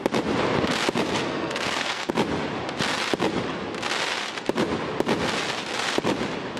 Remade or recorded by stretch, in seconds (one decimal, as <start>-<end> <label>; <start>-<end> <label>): 0.0-1.2 recorded; 1.2-2.1 remade; 2.1-6.6 recorded